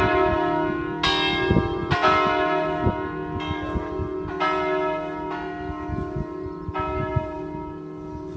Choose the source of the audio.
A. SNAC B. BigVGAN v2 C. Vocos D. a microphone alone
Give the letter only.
D